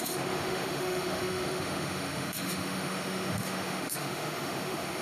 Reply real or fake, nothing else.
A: fake